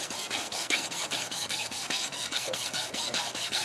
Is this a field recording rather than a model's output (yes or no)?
no